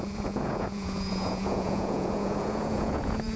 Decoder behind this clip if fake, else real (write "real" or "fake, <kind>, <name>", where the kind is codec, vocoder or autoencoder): fake, vocoder, Vocos